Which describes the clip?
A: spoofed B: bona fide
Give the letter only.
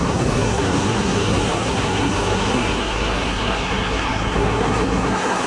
A